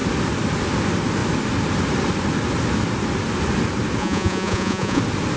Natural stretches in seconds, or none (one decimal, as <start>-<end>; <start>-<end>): 0.0-4.0; 5.0-5.4